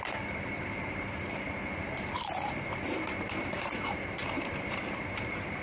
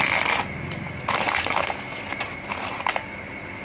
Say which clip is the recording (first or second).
second